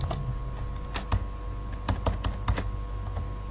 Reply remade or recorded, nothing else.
recorded